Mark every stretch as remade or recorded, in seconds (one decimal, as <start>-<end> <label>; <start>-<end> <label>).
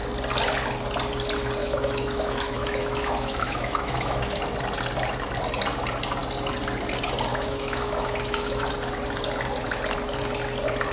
0.0-1.6 recorded; 1.6-4.4 remade; 4.4-7.3 recorded; 7.3-8.7 remade; 8.7-10.9 recorded